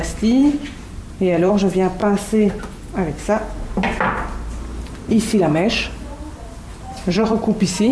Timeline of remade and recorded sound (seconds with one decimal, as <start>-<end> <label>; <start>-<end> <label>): 0.0-0.4 recorded; 0.4-1.5 remade; 1.5-6.7 recorded; 6.7-7.4 remade; 7.4-7.9 recorded